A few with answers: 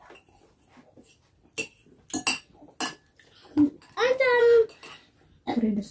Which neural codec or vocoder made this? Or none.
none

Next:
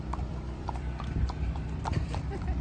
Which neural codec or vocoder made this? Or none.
vocoder, BigVGAN v2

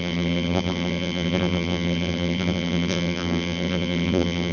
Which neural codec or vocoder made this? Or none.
vocoder, BigVGAN v2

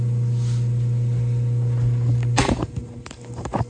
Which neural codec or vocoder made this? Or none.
none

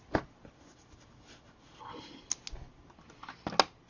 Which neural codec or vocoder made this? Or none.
none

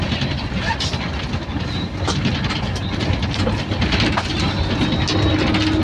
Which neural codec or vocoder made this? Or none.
none